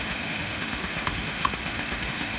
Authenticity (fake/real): fake